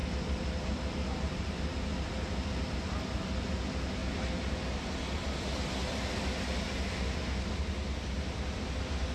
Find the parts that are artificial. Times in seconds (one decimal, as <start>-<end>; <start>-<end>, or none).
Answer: none